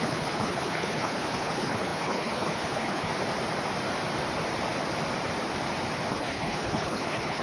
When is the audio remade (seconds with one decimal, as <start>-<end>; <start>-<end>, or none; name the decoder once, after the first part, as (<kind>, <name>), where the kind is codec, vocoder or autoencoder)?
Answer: 0.0-3.1 (codec, HILCodec); 6.1-7.4